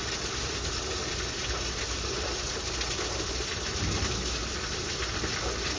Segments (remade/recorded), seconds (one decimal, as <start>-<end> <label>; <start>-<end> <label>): 0.0-5.8 recorded